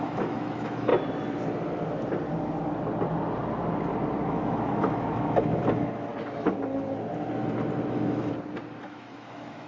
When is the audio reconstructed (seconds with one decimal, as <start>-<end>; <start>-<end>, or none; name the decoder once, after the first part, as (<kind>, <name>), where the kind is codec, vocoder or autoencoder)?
0.0-0.9 (autoencoder, DAC-VAE); 4.3-6.1; 7.9-8.3; 8.8-9.7